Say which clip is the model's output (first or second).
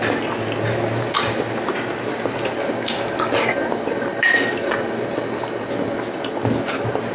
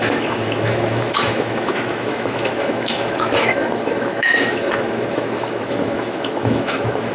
second